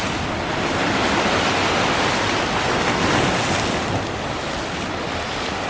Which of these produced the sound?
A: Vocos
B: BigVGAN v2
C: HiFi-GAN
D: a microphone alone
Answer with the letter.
D